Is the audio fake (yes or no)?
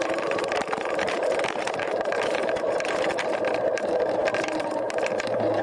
yes